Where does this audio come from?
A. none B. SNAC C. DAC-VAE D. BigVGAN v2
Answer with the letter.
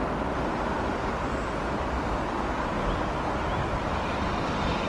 A